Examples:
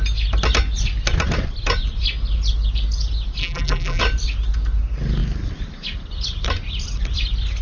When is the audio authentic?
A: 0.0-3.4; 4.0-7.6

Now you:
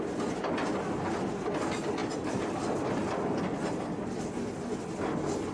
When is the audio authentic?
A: 0.0-5.5